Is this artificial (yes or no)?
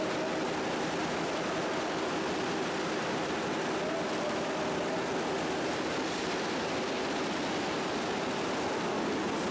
no